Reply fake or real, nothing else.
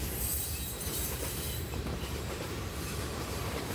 fake